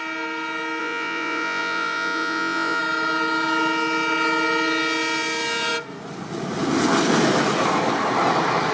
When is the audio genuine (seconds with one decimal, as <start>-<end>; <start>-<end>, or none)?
0.0-0.8; 2.8-8.7